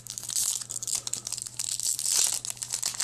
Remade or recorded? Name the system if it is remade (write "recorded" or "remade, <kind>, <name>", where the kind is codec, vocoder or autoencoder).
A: recorded